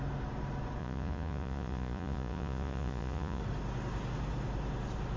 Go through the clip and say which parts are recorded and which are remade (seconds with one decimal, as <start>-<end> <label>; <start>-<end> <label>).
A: 0.0-0.8 recorded; 0.8-3.4 remade; 3.4-5.2 recorded

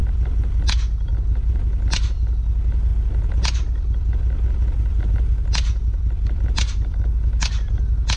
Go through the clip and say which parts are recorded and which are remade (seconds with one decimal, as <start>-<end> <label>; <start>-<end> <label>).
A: 0.0-8.2 recorded

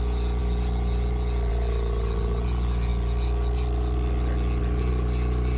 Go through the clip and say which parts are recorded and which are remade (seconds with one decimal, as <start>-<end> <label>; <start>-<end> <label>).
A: 0.0-5.6 recorded

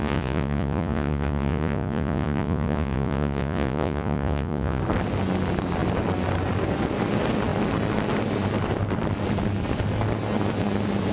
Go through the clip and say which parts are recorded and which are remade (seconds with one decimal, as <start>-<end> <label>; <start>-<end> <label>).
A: 0.0-4.8 remade; 4.8-11.1 recorded